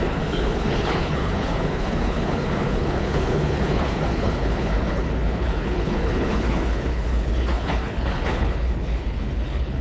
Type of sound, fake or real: fake